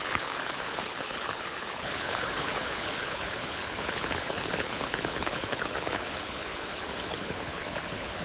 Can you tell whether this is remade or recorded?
remade